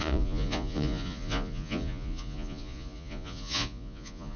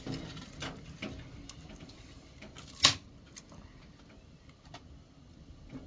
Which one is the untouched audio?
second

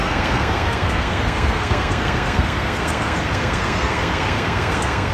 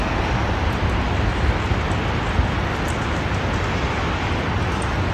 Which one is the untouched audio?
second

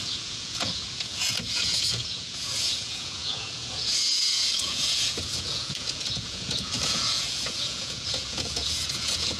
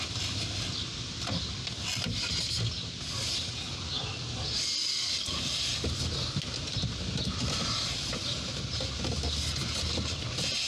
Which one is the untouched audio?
second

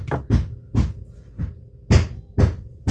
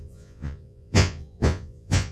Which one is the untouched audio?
first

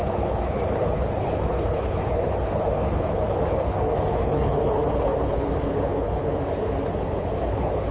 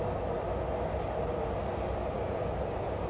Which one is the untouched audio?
second